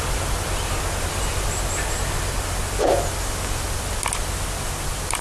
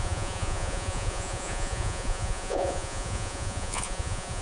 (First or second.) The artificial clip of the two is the second